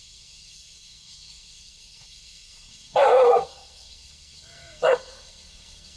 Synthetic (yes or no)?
yes